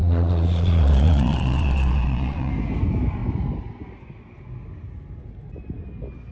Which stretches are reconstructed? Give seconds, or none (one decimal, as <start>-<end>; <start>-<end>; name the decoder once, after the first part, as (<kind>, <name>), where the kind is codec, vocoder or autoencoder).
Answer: 0.0-2.5 (vocoder, Vocos)